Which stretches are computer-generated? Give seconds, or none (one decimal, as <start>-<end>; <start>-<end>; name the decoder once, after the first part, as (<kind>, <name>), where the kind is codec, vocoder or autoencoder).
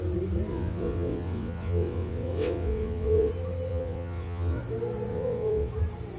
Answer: 0.5-3.3 (vocoder, WaveNeXt); 3.7-4.6; 5.1-5.7